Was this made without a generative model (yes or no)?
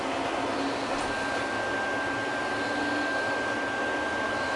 yes